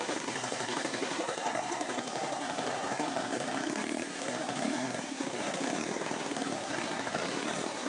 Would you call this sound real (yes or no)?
no